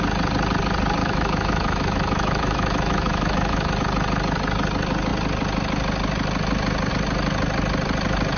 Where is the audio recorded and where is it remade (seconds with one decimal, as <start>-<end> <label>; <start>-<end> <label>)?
0.0-1.0 recorded; 1.0-3.7 remade; 3.7-8.4 recorded